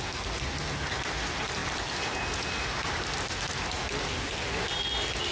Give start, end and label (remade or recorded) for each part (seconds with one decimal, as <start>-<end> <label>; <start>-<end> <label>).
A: 0.0-1.6 recorded; 1.6-4.8 remade; 4.8-5.3 recorded